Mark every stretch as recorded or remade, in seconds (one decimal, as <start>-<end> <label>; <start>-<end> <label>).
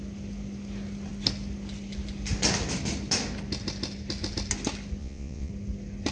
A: 0.0-5.0 recorded; 5.0-5.5 remade; 5.5-6.1 recorded